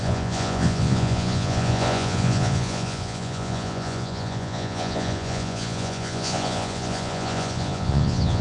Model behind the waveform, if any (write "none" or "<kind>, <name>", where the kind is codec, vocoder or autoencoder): vocoder, Vocos